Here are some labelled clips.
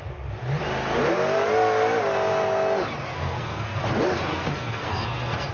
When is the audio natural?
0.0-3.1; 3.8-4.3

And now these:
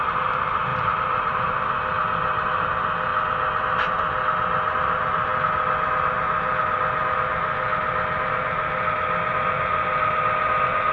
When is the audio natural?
0.0-0.7; 1.5-10.9